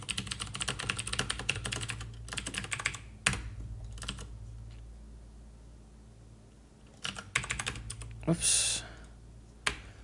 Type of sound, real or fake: real